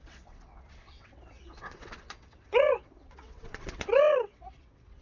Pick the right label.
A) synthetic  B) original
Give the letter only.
A